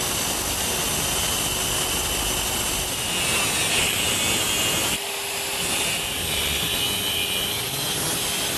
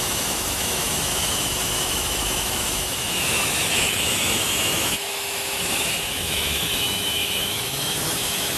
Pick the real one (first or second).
first